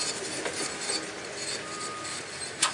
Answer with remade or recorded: recorded